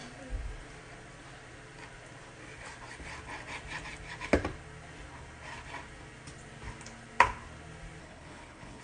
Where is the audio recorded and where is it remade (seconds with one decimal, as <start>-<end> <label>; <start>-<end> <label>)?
0.0-8.0 recorded; 8.0-8.8 remade